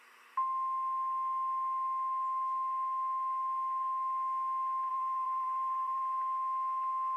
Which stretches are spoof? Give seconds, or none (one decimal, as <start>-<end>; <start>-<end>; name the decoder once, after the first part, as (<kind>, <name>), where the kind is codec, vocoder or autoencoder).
4.9-6.0 (vocoder, BigVGAN v2)